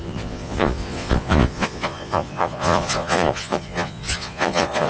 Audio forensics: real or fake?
fake